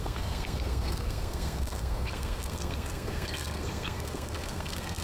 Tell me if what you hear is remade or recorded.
remade